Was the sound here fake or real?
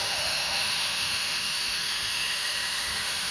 fake